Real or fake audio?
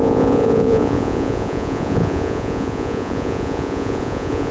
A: fake